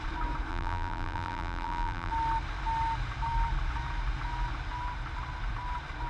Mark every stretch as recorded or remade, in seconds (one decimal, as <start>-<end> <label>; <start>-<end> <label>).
0.0-0.5 recorded; 0.5-2.1 remade; 2.1-6.1 recorded